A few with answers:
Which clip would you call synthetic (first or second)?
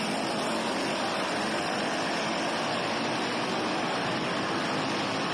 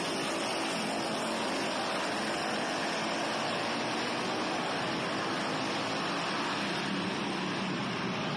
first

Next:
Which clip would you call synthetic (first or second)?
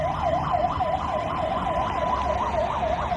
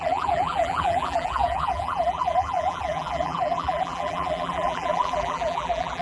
second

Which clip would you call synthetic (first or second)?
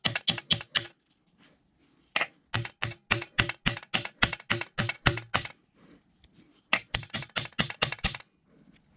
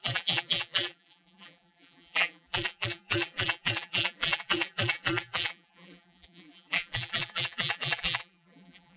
second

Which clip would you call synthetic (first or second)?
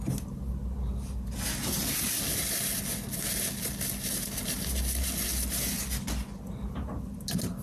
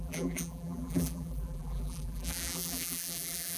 second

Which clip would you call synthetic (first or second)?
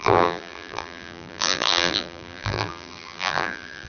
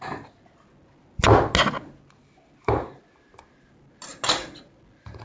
first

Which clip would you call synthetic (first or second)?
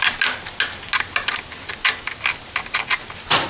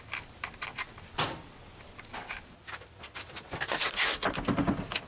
second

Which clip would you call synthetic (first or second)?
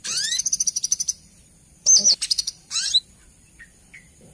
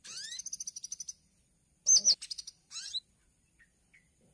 first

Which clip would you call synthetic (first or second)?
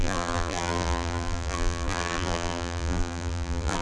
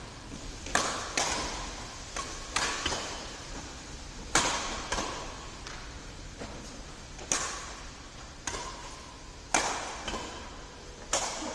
first